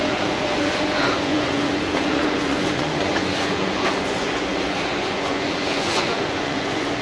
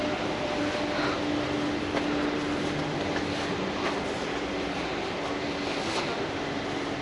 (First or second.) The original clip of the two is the second